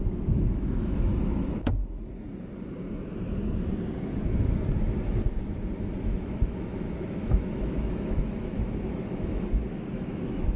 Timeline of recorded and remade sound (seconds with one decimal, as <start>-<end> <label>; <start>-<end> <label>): 0.0-1.8 remade; 1.8-6.0 recorded; 6.0-10.6 remade